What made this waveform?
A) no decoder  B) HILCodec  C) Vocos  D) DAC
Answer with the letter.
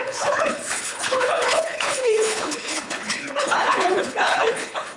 B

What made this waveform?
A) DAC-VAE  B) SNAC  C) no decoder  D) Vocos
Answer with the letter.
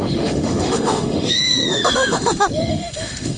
A